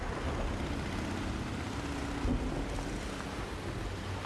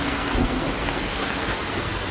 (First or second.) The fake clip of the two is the second